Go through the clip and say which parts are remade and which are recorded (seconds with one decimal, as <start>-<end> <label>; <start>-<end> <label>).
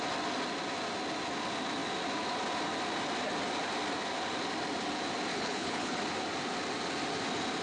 0.0-5.3 recorded; 5.3-6.0 remade; 6.0-7.6 recorded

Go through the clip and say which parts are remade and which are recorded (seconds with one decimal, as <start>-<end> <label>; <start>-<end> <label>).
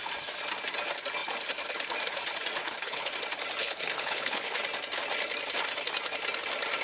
0.0-2.6 recorded; 2.6-3.1 remade; 3.1-3.6 recorded; 3.6-4.5 remade; 4.5-6.8 recorded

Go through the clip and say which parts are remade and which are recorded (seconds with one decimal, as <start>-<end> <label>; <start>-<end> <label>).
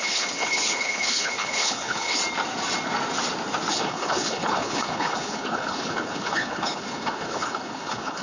0.0-2.2 remade; 2.2-3.7 recorded; 3.7-8.2 remade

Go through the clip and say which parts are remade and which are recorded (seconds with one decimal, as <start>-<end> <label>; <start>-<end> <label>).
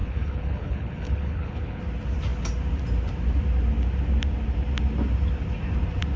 0.0-1.8 remade; 1.8-6.2 recorded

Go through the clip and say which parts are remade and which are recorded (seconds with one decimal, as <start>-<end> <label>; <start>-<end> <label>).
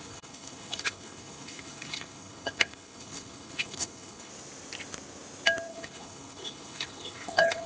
0.0-4.3 remade; 4.3-5.7 recorded; 5.7-7.7 remade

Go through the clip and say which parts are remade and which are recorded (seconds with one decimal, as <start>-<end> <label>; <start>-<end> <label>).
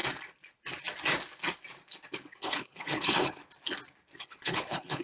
0.0-2.3 recorded; 2.3-3.4 remade; 3.4-4.2 recorded; 4.2-5.0 remade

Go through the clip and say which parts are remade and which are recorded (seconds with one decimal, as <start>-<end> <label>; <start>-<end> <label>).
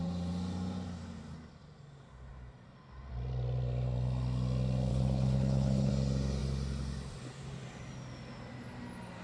0.0-4.9 recorded; 4.9-5.9 remade; 5.9-9.2 recorded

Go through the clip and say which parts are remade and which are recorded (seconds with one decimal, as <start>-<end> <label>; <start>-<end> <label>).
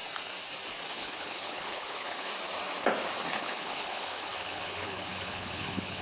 0.0-0.9 recorded; 0.9-2.3 remade; 2.3-3.3 recorded; 3.3-6.0 remade